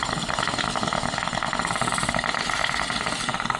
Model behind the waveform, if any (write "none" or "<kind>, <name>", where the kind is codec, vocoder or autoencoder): none